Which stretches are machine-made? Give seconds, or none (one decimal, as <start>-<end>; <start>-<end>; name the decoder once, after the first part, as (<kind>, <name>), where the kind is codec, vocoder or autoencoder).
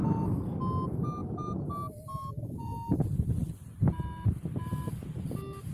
none